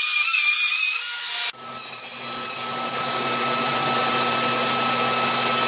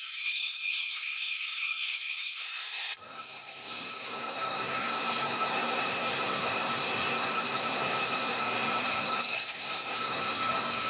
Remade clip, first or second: second